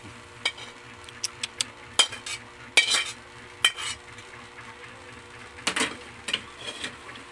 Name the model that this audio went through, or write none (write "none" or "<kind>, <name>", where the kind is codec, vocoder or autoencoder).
none